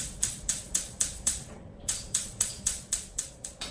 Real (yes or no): no